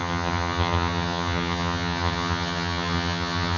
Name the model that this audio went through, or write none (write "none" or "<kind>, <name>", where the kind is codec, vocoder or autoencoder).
vocoder, HiFi-GAN